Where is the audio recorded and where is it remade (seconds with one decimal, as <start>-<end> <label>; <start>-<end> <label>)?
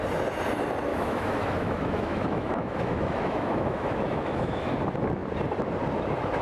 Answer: 0.0-0.9 recorded; 0.9-4.7 remade; 4.7-6.4 recorded